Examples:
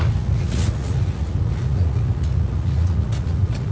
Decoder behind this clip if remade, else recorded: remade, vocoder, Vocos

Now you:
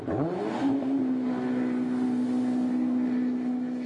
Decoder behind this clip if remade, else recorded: recorded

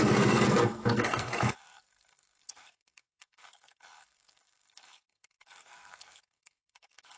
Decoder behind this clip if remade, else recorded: remade, codec, SNAC